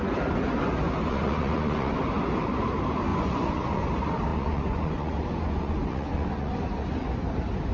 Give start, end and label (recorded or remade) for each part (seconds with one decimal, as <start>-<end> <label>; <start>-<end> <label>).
0.0-1.1 recorded; 1.1-2.0 remade; 2.0-3.1 recorded; 3.1-3.9 remade; 3.9-4.3 recorded; 4.3-6.5 remade; 6.5-7.7 recorded

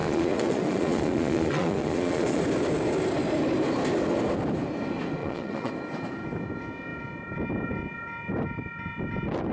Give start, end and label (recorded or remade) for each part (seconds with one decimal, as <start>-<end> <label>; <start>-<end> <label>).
0.0-2.4 remade; 2.4-5.2 recorded; 5.2-5.7 remade; 5.7-9.5 recorded

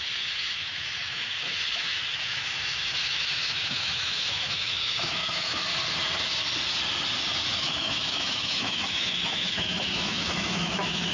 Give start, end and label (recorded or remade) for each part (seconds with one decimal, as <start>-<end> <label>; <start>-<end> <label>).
0.0-5.7 remade; 5.7-7.6 recorded; 7.6-11.1 remade